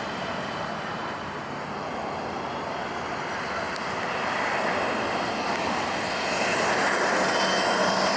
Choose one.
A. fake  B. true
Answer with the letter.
B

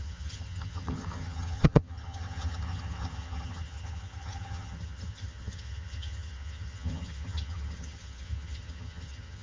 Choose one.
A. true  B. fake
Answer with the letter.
B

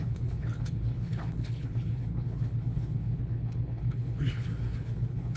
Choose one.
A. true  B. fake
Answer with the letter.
B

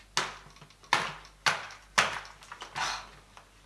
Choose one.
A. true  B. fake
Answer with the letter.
A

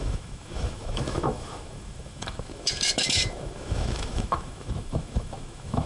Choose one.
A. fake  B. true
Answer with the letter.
A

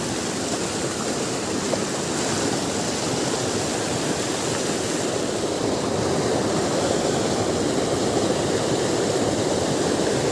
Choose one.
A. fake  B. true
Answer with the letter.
B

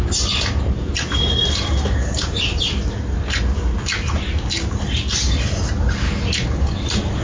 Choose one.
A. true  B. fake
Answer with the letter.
A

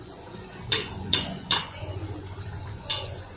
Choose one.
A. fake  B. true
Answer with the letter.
A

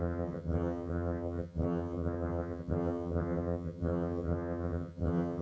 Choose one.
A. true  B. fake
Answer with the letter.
B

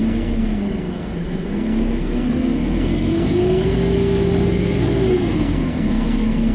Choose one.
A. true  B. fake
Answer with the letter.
B